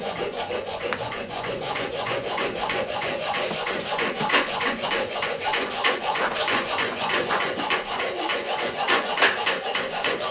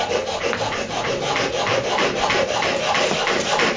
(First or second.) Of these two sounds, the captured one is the second